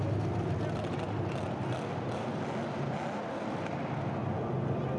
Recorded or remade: recorded